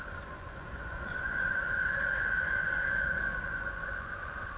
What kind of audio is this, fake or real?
fake